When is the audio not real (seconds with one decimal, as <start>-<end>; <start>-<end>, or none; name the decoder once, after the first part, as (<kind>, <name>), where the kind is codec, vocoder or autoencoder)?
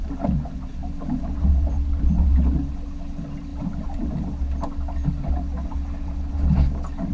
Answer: none